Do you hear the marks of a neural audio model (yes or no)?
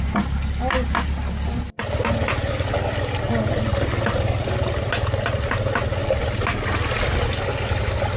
no